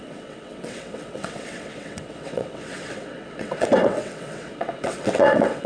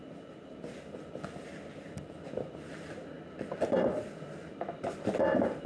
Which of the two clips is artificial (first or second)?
first